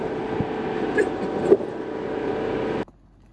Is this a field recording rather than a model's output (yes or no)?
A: yes